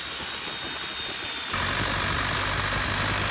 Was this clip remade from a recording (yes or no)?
no